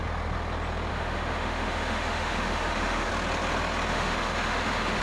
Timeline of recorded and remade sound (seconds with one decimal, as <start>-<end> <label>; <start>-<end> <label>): 0.0-0.9 recorded; 0.9-3.1 remade; 3.1-3.9 recorded; 3.9-5.0 remade